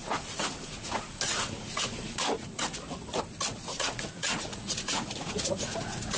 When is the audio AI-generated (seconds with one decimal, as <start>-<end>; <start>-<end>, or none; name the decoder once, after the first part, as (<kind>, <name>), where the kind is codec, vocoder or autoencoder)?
0.0-2.7 (vocoder, Vocos); 3.2-6.2